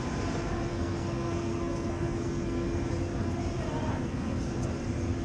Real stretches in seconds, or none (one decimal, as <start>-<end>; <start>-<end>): 0.0-0.7; 2.9-3.9; 4.5-5.2